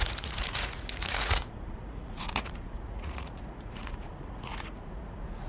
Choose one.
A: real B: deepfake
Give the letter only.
B